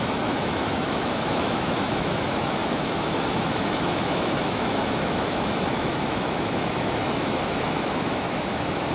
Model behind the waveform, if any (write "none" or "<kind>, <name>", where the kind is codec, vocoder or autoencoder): autoencoder, DAC-VAE